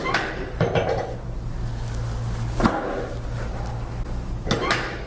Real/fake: real